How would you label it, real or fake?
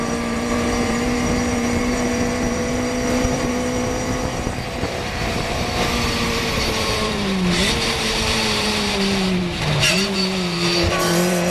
fake